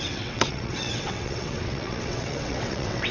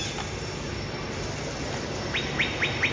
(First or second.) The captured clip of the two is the second